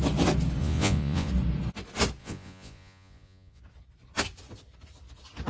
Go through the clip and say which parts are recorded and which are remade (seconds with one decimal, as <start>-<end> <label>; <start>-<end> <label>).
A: 0.0-0.6 recorded; 0.6-1.3 remade; 1.3-2.2 recorded; 2.2-3.6 remade; 3.6-5.5 recorded